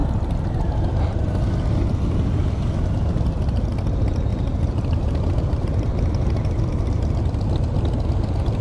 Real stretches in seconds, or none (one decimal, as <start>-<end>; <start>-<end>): 0.0-4.3; 6.6-8.6